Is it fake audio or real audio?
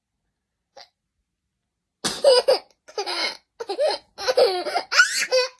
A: real